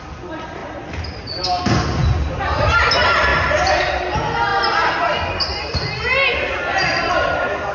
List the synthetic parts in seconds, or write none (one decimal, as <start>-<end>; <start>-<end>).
none

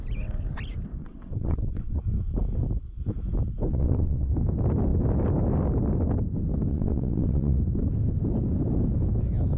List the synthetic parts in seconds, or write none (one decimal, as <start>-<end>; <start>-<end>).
1.0-2.0; 3.7-4.3; 6.7-7.6